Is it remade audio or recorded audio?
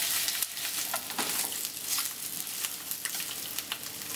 recorded